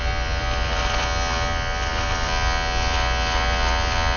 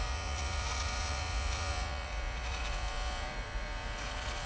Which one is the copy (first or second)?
second